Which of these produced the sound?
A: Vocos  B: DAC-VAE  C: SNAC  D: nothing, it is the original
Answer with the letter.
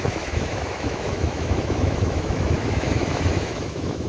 B